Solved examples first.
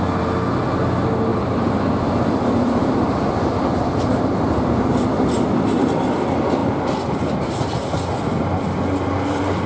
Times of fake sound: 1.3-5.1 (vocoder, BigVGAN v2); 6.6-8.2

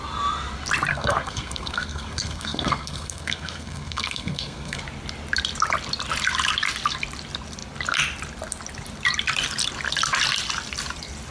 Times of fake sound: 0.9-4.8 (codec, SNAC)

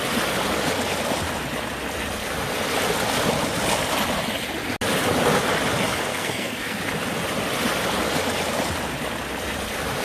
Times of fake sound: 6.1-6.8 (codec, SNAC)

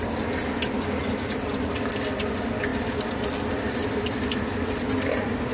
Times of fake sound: none